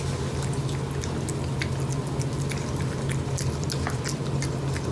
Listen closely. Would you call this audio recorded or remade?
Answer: recorded